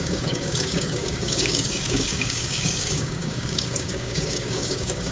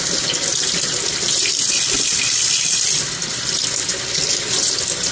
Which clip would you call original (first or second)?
second